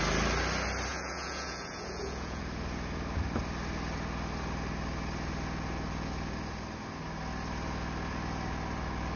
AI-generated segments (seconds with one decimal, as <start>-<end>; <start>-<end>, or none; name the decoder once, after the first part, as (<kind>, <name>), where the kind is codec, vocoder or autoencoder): 0.9-2.4 (vocoder, Vocos)